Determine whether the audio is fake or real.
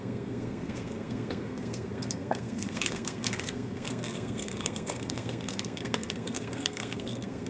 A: fake